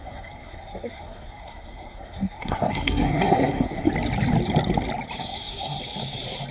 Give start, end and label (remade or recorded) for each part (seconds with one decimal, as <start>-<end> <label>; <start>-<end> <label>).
0.0-3.9 remade; 3.9-5.2 recorded; 5.2-5.8 remade; 5.8-6.5 recorded